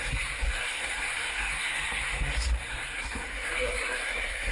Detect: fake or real fake